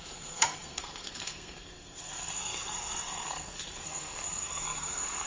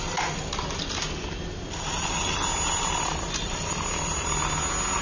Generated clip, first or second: first